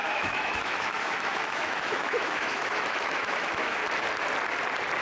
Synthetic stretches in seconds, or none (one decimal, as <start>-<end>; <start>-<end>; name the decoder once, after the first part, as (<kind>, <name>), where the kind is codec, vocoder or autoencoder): 0.0-3.8 (autoencoder, DAC-VAE)